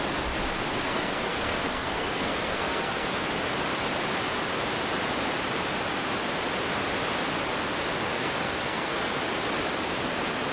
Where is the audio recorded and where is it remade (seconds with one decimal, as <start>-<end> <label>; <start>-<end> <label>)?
0.0-0.7 recorded; 0.7-3.2 remade; 3.2-8.1 recorded; 8.1-9.2 remade; 9.2-10.5 recorded